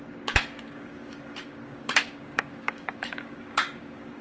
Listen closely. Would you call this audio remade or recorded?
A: remade